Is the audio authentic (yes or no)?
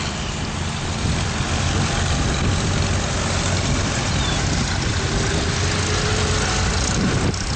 yes